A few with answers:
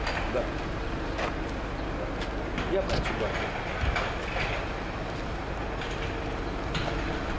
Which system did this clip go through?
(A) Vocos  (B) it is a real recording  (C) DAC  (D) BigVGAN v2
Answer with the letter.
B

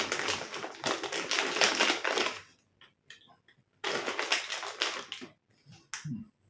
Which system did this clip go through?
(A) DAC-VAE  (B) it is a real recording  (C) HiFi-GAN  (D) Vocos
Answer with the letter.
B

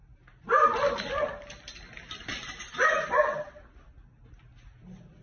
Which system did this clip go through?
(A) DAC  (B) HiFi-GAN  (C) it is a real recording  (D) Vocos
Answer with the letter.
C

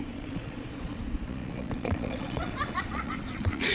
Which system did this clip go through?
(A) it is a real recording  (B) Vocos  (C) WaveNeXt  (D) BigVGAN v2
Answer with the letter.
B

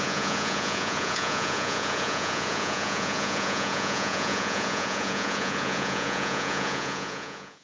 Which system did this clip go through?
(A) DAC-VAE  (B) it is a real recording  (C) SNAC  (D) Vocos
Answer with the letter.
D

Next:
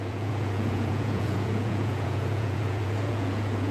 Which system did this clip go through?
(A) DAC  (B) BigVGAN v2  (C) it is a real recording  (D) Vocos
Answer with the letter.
D